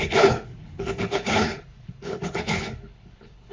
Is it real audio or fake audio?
fake